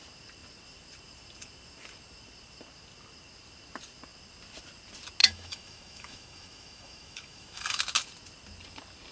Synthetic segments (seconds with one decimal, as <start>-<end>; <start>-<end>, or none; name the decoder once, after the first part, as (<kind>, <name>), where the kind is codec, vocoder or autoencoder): 5.2-7.8 (autoencoder, DAC-VAE)